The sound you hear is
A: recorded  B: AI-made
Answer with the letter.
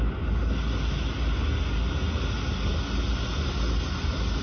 A